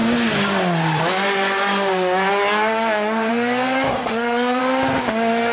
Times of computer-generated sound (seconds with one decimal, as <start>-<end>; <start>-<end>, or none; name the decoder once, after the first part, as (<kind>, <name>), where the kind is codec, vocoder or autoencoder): 3.9-4.6 (codec, SNAC)